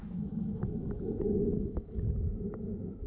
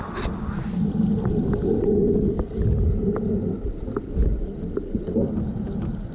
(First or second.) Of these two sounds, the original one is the second